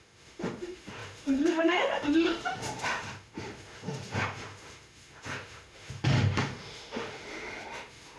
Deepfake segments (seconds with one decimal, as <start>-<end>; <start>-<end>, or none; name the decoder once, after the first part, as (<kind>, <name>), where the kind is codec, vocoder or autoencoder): 0.0-8.2 (autoencoder, DAC-VAE)